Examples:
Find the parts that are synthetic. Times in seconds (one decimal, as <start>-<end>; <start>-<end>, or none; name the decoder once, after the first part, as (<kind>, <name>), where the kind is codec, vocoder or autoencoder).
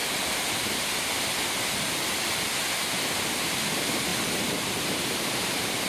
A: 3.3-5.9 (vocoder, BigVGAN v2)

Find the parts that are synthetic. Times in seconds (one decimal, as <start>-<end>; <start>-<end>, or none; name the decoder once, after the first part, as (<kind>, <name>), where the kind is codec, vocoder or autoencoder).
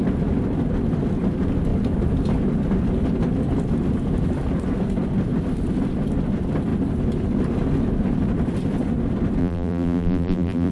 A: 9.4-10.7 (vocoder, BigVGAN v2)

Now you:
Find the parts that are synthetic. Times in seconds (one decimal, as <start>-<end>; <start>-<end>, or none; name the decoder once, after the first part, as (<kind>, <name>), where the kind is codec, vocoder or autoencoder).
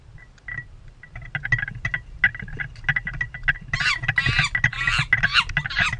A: 0.5-1.3 (vocoder, BigVGAN v2)